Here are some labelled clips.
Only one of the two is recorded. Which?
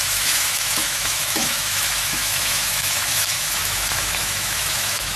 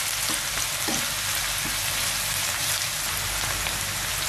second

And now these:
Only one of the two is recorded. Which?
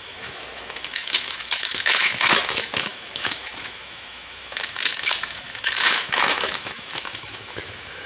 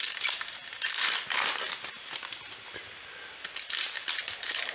second